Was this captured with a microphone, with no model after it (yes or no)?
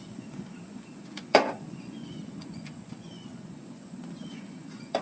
no